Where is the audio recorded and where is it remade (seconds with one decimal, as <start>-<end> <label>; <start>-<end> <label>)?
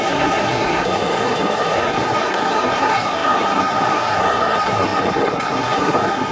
0.0-6.3 remade